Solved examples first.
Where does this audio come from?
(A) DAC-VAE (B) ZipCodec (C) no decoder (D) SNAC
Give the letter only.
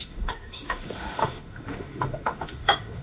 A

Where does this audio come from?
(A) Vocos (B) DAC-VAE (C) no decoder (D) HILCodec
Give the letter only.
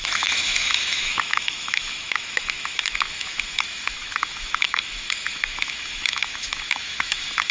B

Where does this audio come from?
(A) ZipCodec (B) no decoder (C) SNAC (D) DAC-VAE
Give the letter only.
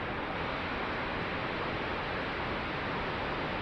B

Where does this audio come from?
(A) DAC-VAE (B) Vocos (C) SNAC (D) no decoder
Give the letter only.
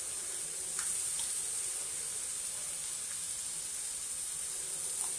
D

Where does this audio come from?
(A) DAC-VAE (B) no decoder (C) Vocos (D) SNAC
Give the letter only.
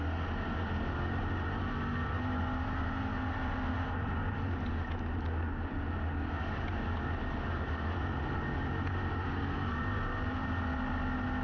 B